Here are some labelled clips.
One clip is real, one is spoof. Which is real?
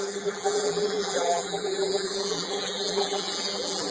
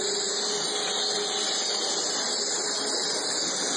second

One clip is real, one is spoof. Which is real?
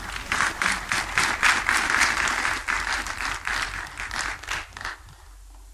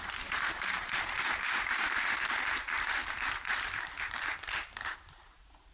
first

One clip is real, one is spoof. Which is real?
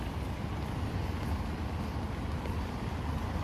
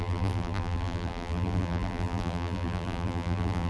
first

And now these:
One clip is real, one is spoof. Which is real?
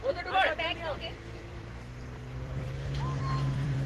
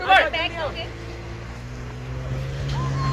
second